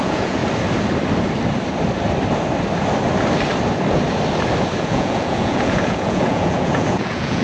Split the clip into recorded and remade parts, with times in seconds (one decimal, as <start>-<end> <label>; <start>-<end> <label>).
0.0-0.4 remade; 0.4-4.8 recorded; 4.8-7.4 remade